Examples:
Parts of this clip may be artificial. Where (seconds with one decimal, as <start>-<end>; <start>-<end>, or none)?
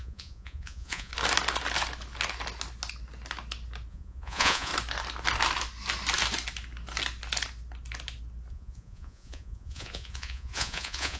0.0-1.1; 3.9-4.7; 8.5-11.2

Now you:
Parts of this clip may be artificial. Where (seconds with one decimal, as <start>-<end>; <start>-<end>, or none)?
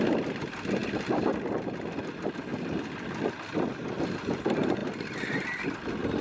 4.8-5.6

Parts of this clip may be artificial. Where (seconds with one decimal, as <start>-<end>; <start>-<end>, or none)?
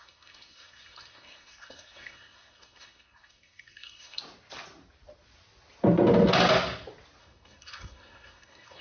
0.0-4.2; 7.2-8.8